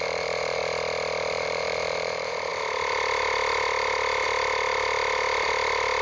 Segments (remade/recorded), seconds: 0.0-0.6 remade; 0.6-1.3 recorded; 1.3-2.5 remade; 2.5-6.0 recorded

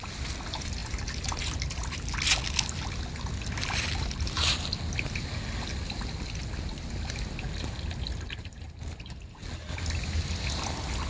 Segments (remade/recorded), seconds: 0.0-11.1 recorded

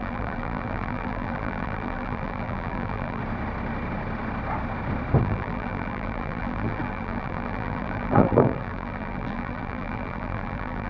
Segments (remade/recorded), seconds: 0.0-3.2 remade; 3.2-5.2 recorded; 5.2-10.9 remade

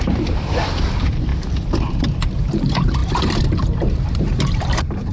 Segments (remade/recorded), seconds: 0.0-1.3 remade; 1.3-1.9 recorded; 1.9-5.1 remade

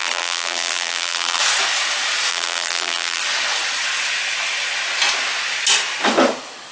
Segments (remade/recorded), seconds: 0.0-1.4 remade; 1.4-2.3 recorded; 2.3-3.2 remade; 3.2-6.7 recorded

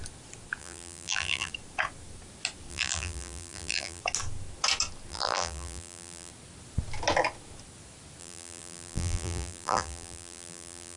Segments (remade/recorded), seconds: 0.0-0.6 recorded; 0.6-1.5 remade; 1.5-2.7 recorded; 2.7-4.0 remade; 4.0-5.1 recorded; 5.1-6.3 remade; 6.3-8.2 recorded; 8.2-11.0 remade

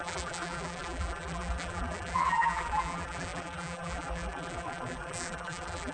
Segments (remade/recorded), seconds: 0.0-5.9 remade